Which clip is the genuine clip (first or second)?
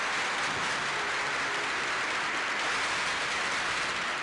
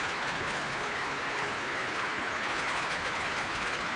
first